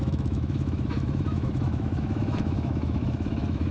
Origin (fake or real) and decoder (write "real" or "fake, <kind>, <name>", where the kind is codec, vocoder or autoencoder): fake, autoencoder, DAC-VAE